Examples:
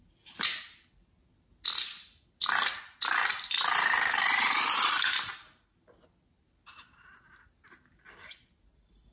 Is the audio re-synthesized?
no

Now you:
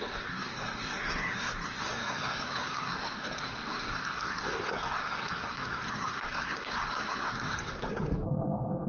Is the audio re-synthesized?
yes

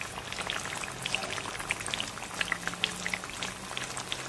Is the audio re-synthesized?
no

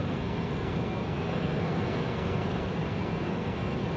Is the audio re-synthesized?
yes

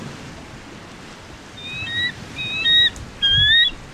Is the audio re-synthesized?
no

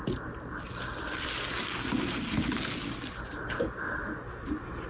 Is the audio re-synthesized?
no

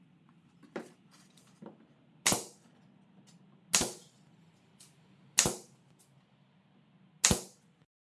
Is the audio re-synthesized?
no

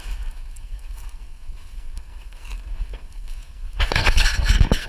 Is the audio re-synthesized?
yes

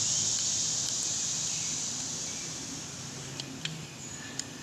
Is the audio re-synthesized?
no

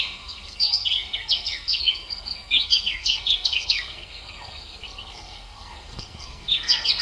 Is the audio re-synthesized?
yes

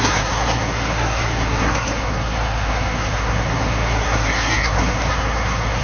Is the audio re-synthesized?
yes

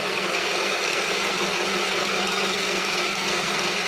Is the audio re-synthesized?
yes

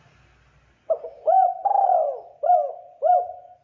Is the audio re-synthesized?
no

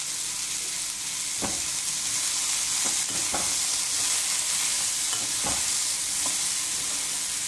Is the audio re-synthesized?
no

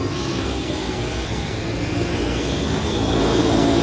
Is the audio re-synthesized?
yes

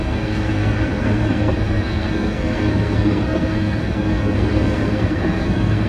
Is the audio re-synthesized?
yes